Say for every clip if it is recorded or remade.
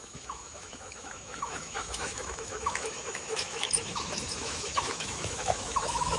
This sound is remade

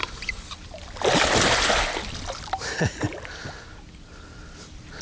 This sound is recorded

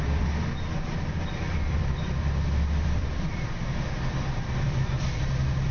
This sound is remade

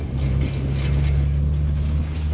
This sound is recorded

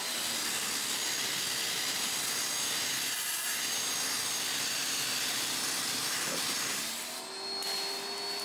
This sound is recorded